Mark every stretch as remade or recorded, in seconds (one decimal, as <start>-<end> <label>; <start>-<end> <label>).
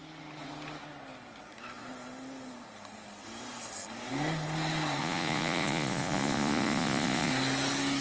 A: 0.0-5.0 recorded; 5.0-7.3 remade; 7.3-8.0 recorded